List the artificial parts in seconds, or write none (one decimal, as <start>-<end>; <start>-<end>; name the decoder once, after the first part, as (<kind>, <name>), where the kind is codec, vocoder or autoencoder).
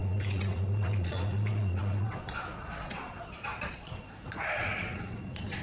0.0-5.6 (vocoder, Vocos)